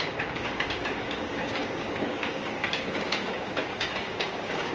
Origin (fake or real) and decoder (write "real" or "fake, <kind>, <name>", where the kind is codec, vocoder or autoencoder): fake, codec, DAC